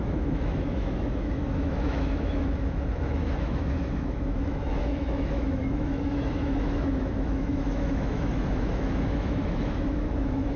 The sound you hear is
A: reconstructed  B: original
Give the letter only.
A